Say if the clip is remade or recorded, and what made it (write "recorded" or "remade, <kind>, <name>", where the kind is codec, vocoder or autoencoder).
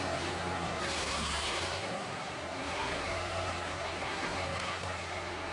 remade, codec, SNAC